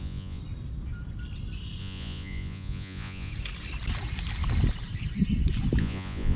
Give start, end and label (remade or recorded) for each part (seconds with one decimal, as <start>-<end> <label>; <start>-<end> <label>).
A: 0.0-0.4 remade; 0.4-1.8 recorded; 1.8-3.3 remade; 3.3-5.8 recorded; 5.8-6.4 remade